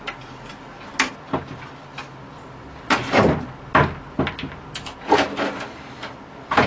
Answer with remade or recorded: recorded